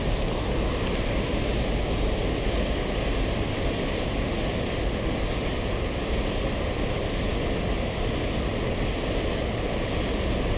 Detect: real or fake real